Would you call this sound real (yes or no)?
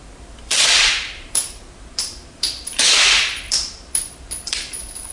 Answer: no